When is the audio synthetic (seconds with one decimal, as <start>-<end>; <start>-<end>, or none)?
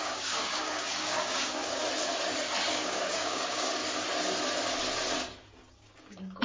0.0-1.8; 2.7-3.8; 5.7-6.4